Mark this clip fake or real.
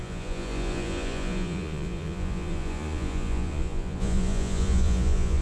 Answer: fake